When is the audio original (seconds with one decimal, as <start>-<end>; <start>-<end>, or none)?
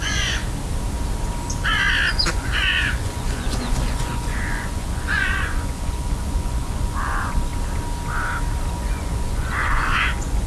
0.4-2.1; 7.5-8.7